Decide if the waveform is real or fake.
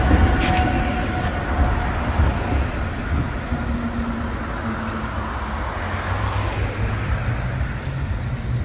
real